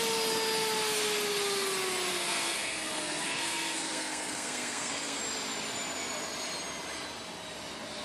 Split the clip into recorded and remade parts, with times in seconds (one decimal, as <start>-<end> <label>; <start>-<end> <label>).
0.0-2.1 recorded; 2.1-5.2 remade; 5.2-8.0 recorded